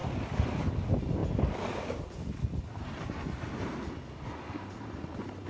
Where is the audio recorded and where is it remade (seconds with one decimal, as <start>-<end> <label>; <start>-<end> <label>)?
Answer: 0.0-5.5 recorded